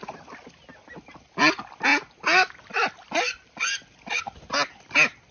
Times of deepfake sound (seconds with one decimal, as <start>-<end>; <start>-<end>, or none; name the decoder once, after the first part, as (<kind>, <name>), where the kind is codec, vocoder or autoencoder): none